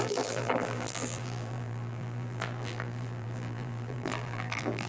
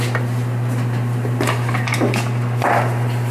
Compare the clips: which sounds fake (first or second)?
first